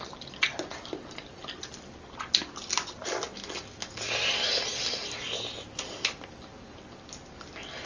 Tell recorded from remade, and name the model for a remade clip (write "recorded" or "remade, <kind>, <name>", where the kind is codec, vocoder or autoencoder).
recorded